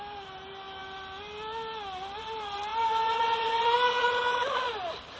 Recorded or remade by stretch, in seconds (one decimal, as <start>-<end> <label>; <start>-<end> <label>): 0.0-5.2 recorded